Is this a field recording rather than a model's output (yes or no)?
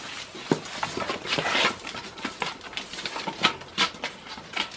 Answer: yes